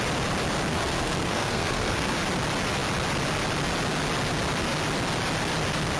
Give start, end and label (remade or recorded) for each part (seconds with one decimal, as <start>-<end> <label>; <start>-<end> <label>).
0.0-0.7 recorded; 0.7-2.1 remade; 2.1-6.0 recorded